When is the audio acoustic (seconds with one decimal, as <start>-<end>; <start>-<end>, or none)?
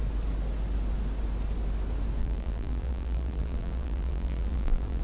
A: 0.0-2.2